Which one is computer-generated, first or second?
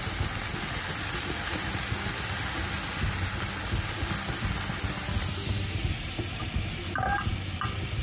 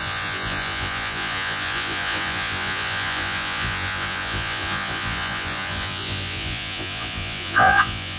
second